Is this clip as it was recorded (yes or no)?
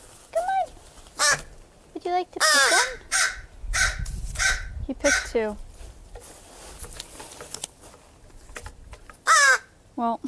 yes